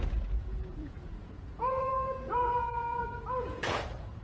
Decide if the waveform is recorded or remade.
remade